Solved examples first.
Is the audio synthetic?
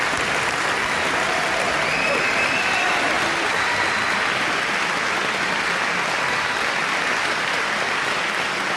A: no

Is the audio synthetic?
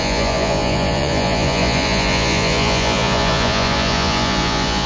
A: yes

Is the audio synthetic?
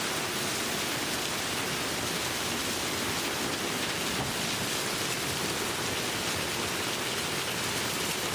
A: no